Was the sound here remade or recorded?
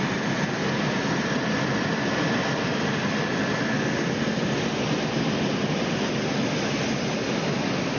recorded